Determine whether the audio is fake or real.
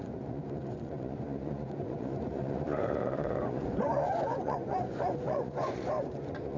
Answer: fake